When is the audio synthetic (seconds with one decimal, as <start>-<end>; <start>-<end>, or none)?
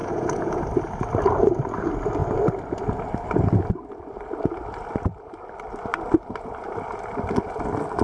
0.0-0.6